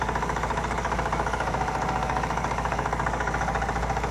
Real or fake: fake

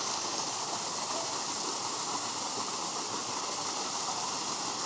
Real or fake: real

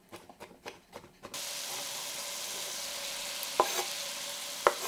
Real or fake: real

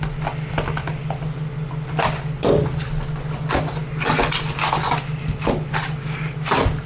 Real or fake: real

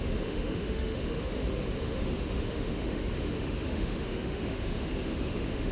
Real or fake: fake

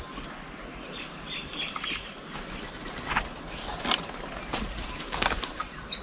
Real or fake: real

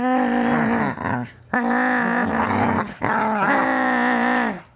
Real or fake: real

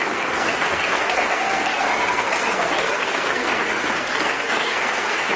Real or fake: fake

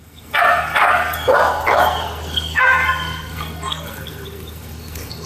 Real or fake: fake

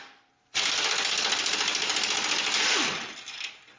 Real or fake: real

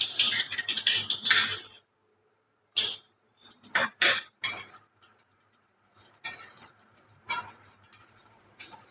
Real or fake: fake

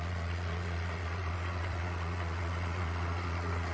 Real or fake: fake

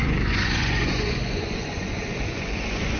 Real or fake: fake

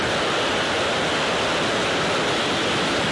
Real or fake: real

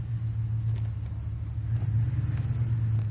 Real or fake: real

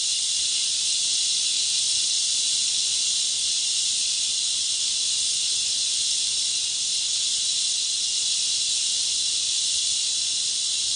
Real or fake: real